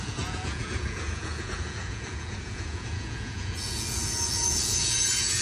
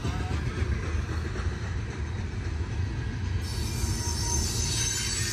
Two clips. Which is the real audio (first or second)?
second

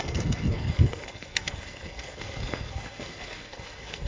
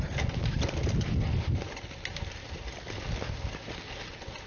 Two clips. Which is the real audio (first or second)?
second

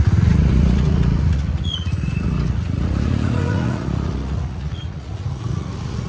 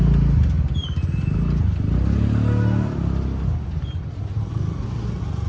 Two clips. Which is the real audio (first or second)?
second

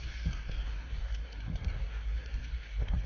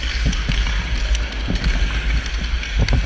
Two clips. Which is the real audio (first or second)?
second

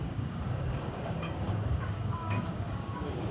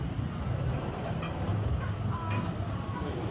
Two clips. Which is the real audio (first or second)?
second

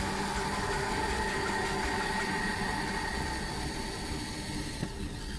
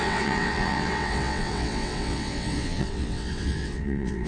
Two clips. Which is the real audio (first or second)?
first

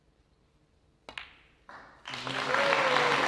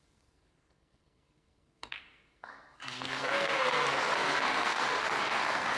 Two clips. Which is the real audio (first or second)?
first